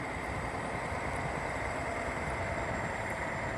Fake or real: real